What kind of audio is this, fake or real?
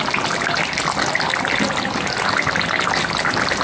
real